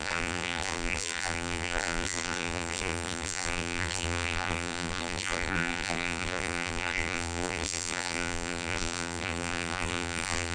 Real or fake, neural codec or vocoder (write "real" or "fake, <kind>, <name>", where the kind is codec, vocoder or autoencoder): fake, vocoder, BigVGAN v2